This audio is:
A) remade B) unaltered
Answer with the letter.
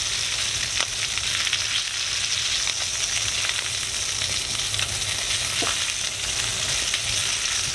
B